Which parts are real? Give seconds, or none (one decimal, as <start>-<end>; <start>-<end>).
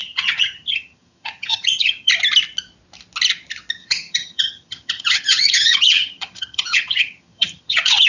2.1-3.8